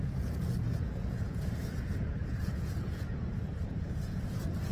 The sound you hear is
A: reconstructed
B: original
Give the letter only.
A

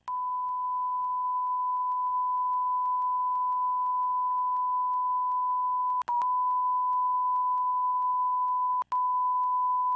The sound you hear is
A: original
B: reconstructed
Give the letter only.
A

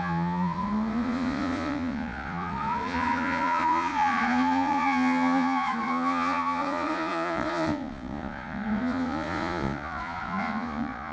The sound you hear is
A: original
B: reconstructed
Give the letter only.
B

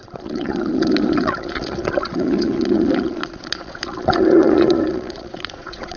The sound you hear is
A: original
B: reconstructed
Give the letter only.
B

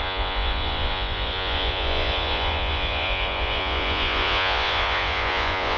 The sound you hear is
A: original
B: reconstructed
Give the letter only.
B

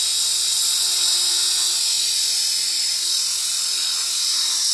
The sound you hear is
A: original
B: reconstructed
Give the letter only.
A